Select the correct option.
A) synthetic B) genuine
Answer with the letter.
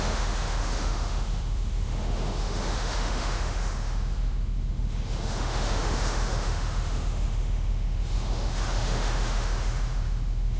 A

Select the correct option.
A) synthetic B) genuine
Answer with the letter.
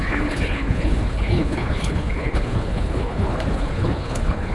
A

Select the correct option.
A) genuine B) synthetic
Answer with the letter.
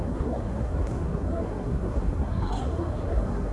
B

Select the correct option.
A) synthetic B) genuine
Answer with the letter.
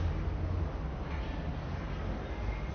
B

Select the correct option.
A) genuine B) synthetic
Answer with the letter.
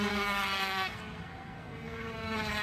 B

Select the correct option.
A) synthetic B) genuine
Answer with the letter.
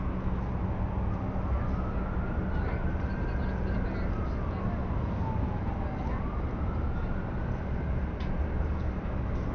B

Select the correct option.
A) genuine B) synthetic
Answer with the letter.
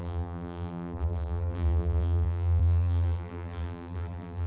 B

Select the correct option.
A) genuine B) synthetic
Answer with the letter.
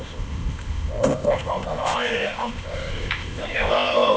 B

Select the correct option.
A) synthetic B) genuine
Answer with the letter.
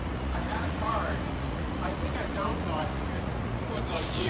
A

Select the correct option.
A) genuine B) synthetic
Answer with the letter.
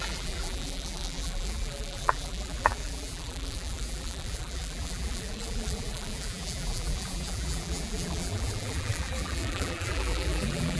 B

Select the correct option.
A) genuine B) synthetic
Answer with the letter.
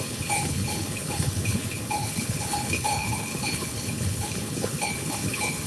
B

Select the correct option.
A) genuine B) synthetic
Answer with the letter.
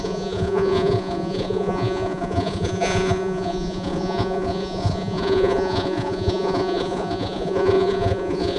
B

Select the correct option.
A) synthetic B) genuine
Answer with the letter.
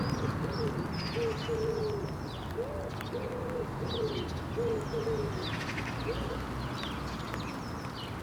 B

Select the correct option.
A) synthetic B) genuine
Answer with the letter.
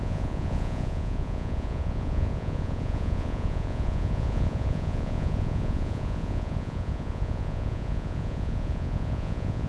A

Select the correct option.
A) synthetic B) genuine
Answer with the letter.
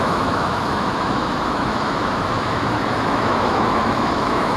A